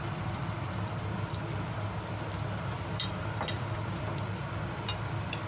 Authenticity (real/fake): fake